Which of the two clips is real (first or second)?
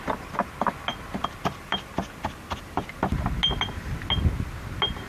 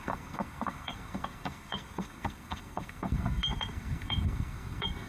first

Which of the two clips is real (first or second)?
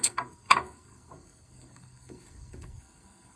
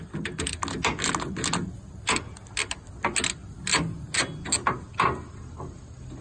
second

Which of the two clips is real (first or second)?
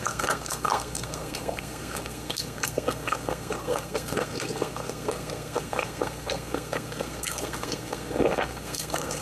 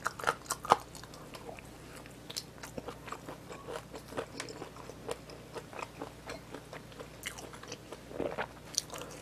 second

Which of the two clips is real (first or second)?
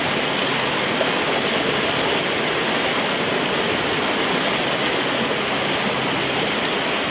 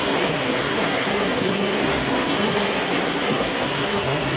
first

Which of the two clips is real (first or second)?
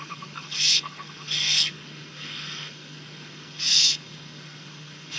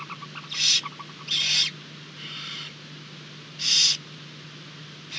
second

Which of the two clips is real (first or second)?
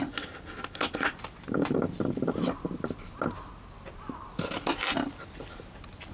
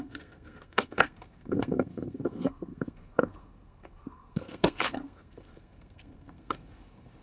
first